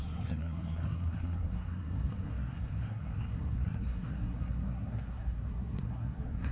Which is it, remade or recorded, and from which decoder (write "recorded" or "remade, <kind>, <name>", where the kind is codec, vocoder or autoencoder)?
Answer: remade, codec, SNAC